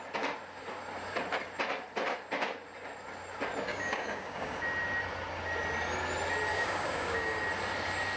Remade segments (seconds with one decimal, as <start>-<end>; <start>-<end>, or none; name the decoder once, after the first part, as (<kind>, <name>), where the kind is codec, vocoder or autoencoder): 3.7-4.6 (codec, DAC); 6.5-7.4